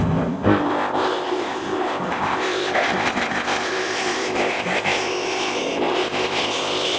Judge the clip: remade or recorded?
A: remade